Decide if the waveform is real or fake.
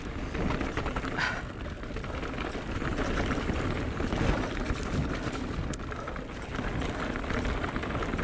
real